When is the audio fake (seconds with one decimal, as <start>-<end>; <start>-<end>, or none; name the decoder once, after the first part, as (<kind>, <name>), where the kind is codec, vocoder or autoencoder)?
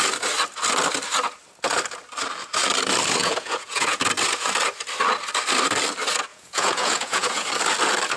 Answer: 3.2-4.0 (vocoder, Vocos); 6.3-7.5